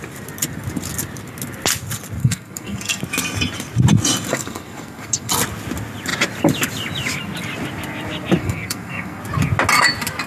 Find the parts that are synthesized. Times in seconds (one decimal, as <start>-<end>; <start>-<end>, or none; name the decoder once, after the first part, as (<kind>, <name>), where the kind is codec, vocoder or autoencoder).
2.2-3.0 (codec, SNAC); 4.3-5.3; 8.4-9.2